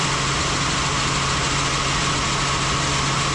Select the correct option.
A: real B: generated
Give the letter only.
A